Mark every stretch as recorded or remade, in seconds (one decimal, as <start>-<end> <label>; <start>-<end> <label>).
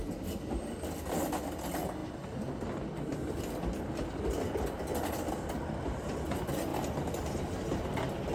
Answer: 0.0-8.3 recorded